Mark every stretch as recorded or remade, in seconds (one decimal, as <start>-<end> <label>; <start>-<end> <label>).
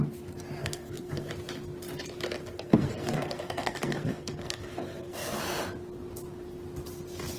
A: 0.0-0.6 recorded; 0.6-1.3 remade; 1.3-2.4 recorded; 2.4-5.4 remade; 5.4-7.4 recorded